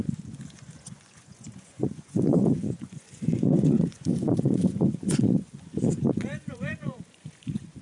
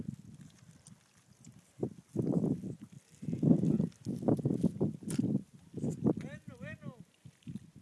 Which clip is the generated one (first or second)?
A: first